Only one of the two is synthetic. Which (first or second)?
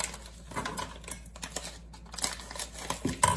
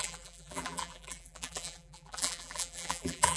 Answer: second